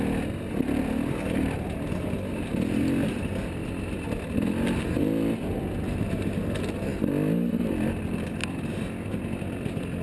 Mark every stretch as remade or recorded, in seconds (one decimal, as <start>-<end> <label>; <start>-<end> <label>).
0.0-10.0 recorded